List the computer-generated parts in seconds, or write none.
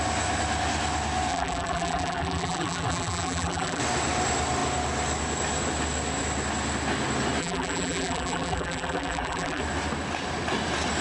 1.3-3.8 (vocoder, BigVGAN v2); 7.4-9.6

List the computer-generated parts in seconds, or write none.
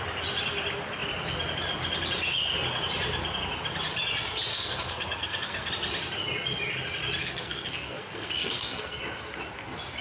4.5-5.7 (codec, SNAC); 7.2-9.0